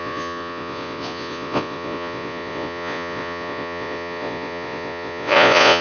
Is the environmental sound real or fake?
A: fake